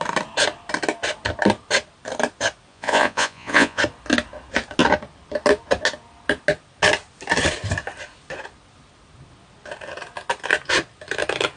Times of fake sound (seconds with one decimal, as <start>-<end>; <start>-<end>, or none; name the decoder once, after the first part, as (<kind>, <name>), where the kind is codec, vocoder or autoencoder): 2.7-3.8 (vocoder, Vocos)